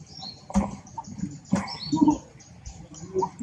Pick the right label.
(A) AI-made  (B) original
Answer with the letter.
B